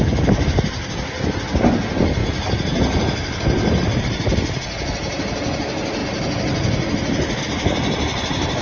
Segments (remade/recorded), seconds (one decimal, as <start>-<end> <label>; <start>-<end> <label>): 0.0-2.2 recorded; 2.2-4.0 remade; 4.0-8.6 recorded